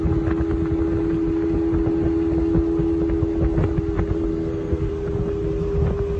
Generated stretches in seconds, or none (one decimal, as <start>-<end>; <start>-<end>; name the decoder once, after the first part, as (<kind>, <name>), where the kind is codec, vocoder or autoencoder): 4.3-4.9 (codec, SNAC)